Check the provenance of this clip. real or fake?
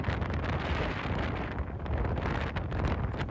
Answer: real